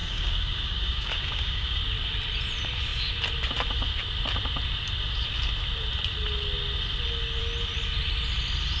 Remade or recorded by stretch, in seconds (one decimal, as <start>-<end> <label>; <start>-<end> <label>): 0.0-1.8 remade; 1.8-8.8 recorded